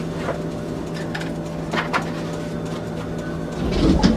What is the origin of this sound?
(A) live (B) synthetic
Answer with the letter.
A